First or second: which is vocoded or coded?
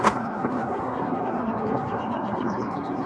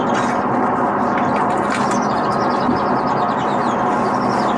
first